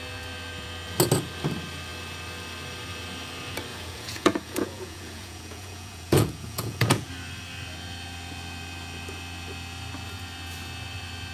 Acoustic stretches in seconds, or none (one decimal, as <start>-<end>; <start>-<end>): 0.0-3.7; 7.1-11.3